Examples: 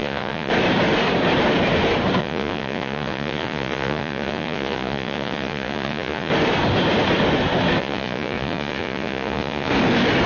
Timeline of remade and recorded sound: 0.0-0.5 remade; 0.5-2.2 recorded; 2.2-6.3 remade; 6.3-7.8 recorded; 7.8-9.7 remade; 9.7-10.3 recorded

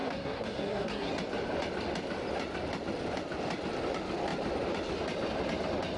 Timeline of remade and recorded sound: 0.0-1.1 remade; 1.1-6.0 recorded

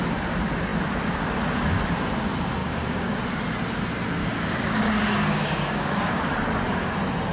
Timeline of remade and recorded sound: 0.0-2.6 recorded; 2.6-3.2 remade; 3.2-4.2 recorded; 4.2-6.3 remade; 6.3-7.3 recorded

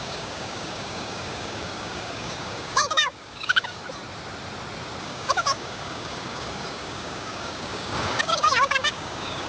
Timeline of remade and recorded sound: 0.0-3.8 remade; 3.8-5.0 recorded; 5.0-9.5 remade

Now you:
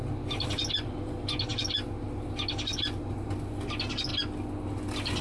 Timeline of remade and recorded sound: 0.0-5.2 recorded